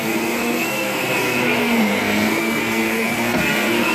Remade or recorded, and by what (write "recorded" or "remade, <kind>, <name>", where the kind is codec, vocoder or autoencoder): remade, codec, SNAC